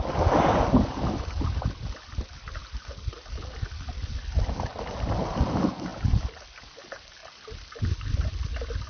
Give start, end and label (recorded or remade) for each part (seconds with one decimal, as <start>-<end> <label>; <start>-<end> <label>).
0.0-8.9 recorded